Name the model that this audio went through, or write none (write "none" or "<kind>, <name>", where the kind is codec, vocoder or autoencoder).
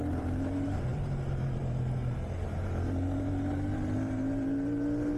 vocoder, BigVGAN v2